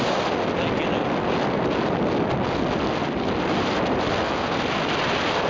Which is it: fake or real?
real